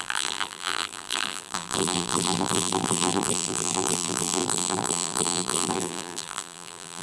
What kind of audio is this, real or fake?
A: fake